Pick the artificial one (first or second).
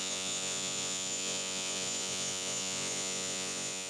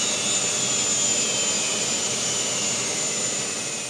first